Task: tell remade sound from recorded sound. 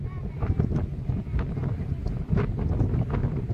recorded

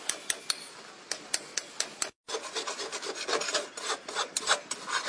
recorded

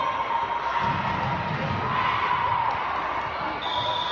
recorded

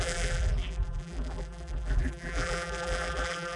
remade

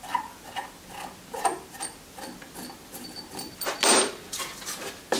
recorded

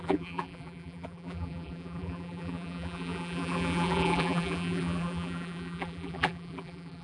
remade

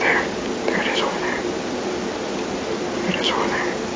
remade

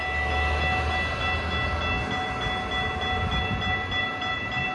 recorded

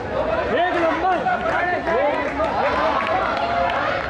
recorded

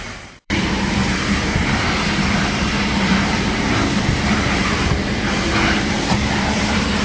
remade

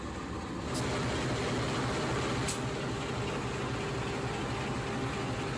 recorded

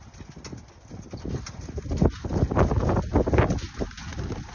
recorded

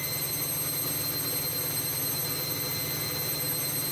recorded